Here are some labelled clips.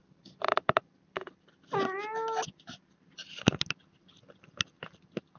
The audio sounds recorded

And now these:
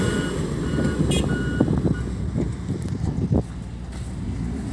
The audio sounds recorded